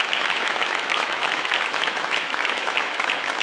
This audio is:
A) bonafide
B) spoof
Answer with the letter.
B